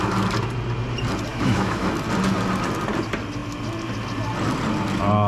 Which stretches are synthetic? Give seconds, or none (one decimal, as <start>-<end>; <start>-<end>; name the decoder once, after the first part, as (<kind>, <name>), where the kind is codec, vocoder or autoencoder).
1.3-1.9 (autoencoder, DAC-VAE)